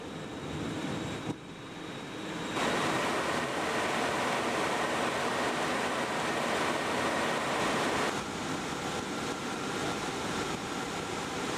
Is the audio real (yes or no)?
yes